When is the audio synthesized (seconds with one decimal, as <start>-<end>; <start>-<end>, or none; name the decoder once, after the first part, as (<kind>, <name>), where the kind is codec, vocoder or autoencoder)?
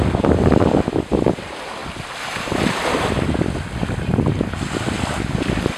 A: none